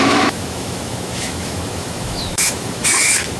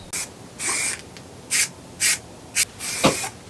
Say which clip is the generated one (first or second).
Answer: first